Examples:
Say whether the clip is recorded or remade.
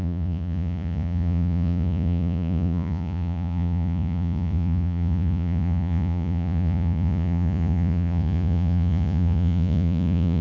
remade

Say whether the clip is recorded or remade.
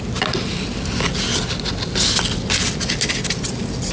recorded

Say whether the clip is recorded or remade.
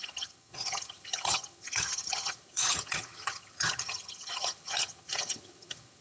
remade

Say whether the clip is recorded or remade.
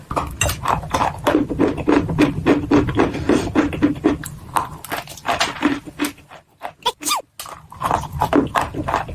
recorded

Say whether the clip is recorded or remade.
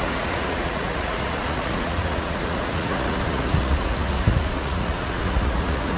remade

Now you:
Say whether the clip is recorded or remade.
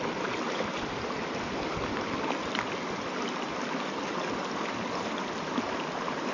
recorded